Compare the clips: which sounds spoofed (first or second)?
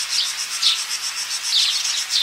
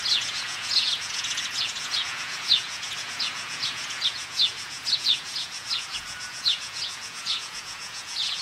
second